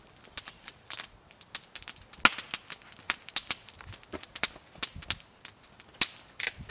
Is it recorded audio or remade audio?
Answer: recorded